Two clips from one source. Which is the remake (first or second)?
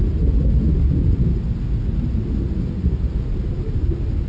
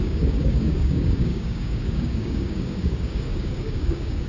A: second